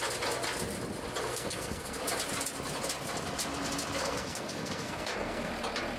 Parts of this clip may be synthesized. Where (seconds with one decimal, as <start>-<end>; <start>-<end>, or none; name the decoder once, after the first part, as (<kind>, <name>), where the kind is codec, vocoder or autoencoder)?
1.3-2.0 (codec, SNAC); 4.0-5.5

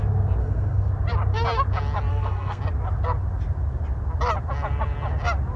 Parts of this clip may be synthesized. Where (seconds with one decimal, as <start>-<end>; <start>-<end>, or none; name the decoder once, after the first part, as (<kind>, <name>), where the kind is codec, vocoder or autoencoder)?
0.4-0.9 (codec, SNAC); 2.1-2.6

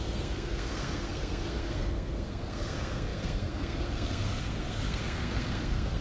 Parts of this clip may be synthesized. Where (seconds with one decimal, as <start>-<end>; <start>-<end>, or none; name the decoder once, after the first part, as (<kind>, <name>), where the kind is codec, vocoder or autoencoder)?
0.0-6.0 (codec, SNAC)